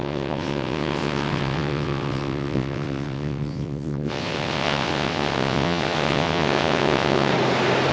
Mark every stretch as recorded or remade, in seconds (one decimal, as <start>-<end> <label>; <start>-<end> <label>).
0.0-7.3 remade; 7.3-7.9 recorded